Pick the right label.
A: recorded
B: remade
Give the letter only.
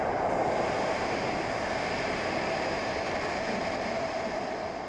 A